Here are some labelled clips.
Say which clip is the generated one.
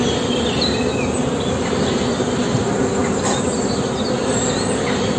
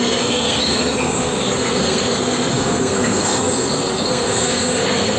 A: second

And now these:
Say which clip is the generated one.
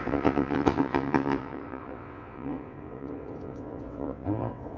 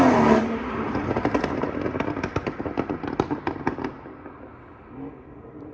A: first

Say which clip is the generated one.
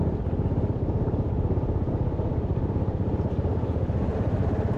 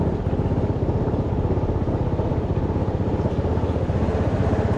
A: first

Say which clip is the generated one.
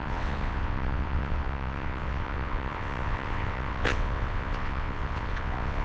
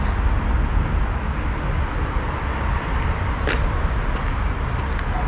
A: first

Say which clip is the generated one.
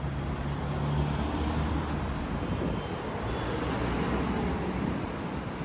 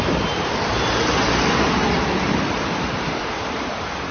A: second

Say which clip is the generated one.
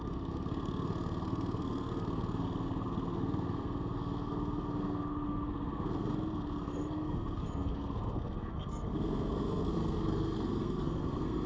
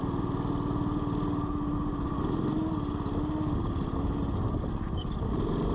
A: first